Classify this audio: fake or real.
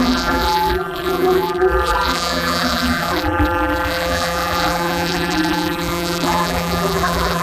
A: fake